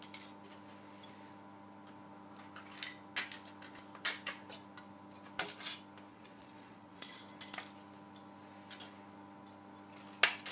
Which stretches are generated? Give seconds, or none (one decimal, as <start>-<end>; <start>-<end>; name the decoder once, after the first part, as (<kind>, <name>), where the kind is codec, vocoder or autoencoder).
6.1-7.2 (vocoder, Vocos)